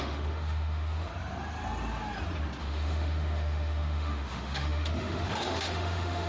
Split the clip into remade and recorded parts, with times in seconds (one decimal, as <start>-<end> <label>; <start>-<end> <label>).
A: 0.0-1.1 remade; 1.1-2.6 recorded; 2.6-6.3 remade